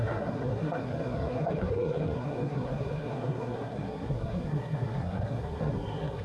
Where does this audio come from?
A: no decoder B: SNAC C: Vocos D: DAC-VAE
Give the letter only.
B